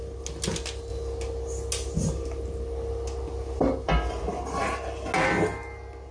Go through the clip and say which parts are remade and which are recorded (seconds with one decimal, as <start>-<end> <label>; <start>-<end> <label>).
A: 0.0-6.1 recorded